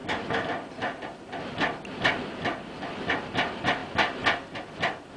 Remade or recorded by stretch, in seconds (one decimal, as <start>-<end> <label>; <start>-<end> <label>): 0.0-5.2 recorded